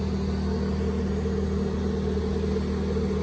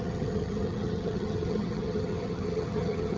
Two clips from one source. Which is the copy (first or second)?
second